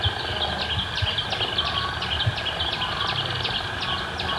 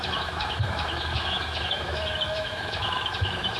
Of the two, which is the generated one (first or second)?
second